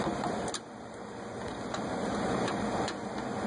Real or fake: real